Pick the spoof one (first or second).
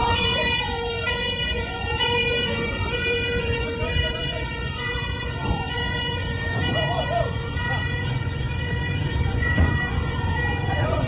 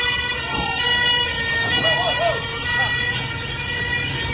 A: first